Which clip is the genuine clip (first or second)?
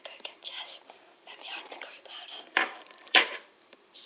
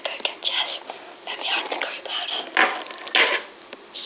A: second